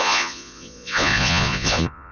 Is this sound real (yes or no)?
no